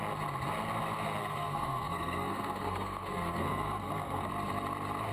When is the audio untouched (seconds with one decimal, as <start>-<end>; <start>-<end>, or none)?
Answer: 0.0-1.2; 4.3-5.1